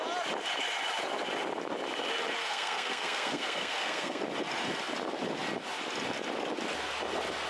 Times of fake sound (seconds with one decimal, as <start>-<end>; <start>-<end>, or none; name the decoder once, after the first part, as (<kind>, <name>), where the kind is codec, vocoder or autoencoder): 2.4-4.2 (codec, SNAC)